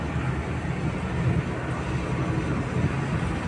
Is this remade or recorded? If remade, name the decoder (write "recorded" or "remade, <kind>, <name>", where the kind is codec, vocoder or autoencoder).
recorded